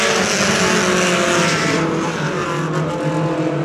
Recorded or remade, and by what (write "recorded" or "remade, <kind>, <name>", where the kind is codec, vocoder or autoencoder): recorded